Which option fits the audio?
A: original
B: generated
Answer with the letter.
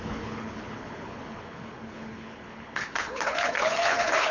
B